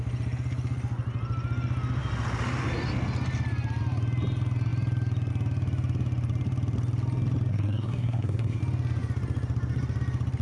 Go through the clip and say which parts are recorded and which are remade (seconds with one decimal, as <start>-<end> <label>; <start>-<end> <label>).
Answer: 0.0-7.5 recorded; 7.5-8.6 remade; 8.6-10.4 recorded